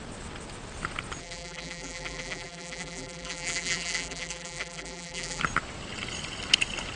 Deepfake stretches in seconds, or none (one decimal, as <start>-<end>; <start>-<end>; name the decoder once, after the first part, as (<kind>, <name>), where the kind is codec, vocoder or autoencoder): 1.2-5.4 (vocoder, BigVGAN v2)